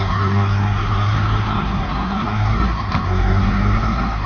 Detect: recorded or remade remade